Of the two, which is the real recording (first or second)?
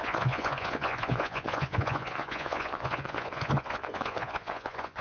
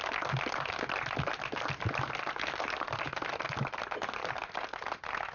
second